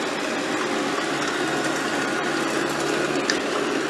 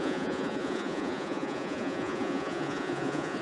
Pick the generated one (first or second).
second